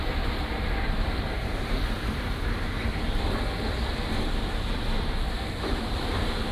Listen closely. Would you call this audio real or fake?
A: fake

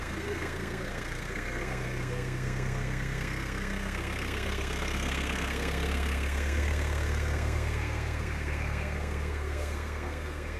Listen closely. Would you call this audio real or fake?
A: fake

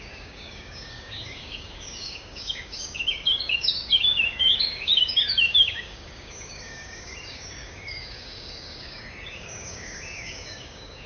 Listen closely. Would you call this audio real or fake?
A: fake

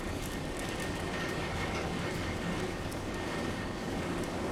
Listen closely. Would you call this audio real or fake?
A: fake